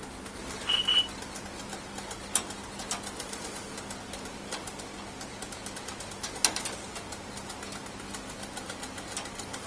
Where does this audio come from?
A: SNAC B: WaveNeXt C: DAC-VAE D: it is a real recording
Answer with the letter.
D